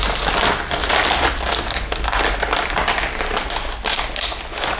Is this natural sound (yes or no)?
yes